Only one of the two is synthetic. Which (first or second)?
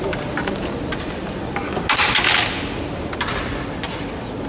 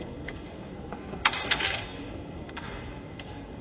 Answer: second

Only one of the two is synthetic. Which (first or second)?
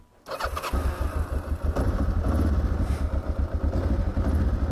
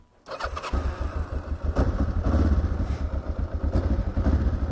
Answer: second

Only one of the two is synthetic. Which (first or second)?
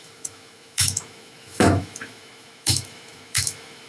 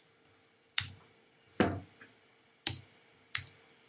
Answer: first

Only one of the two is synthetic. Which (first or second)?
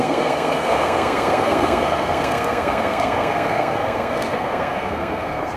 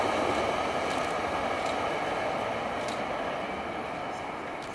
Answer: first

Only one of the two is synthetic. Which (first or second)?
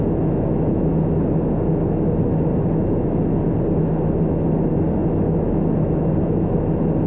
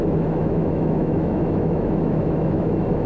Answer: second